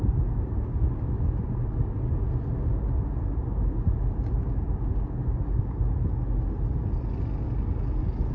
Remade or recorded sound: recorded